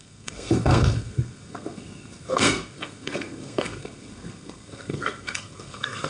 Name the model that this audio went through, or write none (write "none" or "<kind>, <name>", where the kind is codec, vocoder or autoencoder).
codec, SNAC